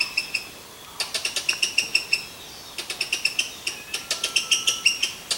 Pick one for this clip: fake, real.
real